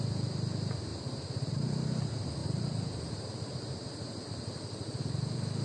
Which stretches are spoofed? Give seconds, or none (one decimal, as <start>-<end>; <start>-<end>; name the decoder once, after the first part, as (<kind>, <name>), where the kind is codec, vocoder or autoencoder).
0.9-2.0 (vocoder, BigVGAN v2); 2.4-4.2